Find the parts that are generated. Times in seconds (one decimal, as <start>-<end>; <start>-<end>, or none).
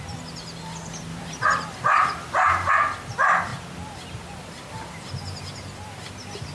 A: 1.1-2.7